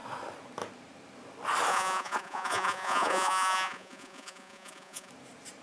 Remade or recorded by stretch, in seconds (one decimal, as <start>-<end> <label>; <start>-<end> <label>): 0.0-1.7 recorded; 1.7-5.1 remade; 5.1-5.6 recorded